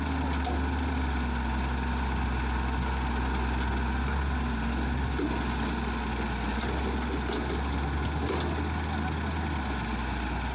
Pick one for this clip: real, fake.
real